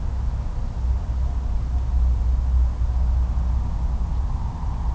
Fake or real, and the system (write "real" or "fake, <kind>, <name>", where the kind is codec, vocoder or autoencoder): real